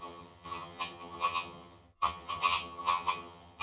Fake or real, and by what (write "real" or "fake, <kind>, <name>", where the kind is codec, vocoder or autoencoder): fake, vocoder, HiFi-GAN